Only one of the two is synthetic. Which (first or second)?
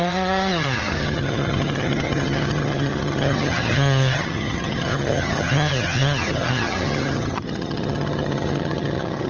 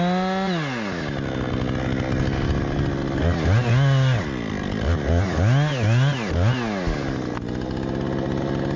first